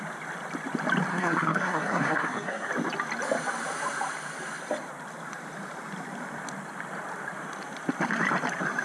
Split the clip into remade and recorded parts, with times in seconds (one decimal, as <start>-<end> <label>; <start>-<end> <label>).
0.0-1.1 recorded; 1.1-2.7 remade; 2.7-8.8 recorded